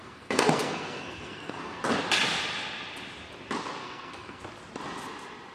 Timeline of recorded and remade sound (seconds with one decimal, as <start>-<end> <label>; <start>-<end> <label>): 0.0-1.8 remade; 1.8-3.8 recorded; 3.8-4.4 remade; 4.4-5.5 recorded